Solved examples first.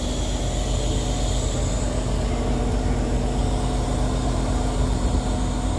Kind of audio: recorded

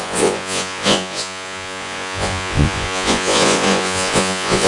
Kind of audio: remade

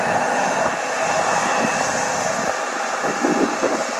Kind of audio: recorded